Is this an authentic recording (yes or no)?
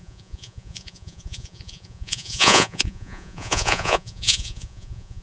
no